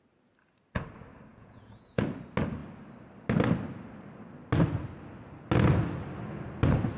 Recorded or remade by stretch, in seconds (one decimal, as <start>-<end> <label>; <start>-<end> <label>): 0.0-1.3 recorded; 1.3-2.0 remade; 2.0-7.0 recorded